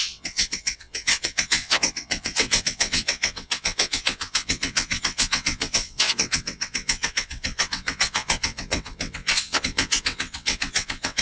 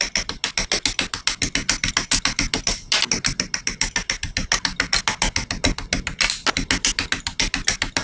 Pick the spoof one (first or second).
first